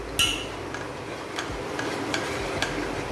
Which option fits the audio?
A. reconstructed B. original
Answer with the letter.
B